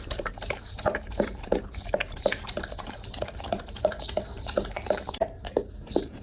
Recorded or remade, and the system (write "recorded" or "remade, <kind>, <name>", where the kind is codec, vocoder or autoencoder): remade, vocoder, BigVGAN v2